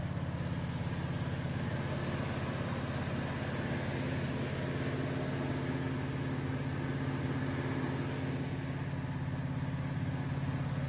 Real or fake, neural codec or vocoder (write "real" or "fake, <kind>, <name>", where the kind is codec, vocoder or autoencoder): real